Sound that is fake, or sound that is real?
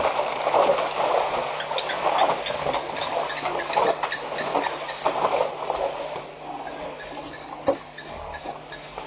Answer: real